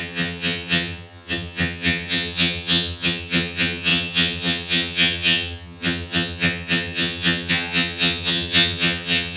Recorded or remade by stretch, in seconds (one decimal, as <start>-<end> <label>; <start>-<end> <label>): 0.0-9.4 remade